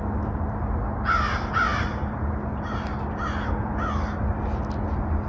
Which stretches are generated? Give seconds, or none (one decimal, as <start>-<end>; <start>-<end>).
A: none

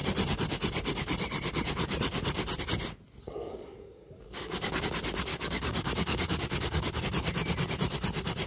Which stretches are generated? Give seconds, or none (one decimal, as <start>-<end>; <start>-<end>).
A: 3.4-4.8; 5.3-7.0

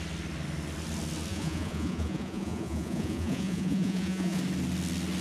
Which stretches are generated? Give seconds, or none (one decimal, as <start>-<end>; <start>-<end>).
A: 1.3-4.4